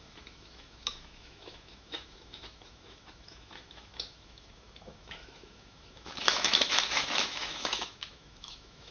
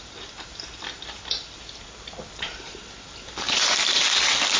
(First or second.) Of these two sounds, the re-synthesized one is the first